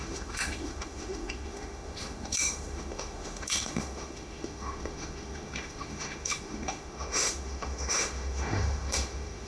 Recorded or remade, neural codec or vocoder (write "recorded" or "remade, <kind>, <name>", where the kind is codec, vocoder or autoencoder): remade, autoencoder, DAC-VAE